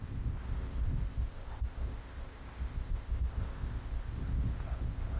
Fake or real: fake